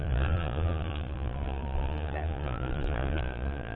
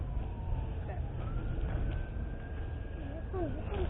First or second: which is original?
second